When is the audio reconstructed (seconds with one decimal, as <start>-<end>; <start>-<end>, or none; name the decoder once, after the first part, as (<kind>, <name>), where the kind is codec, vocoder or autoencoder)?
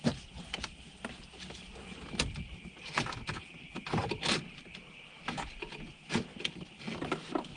none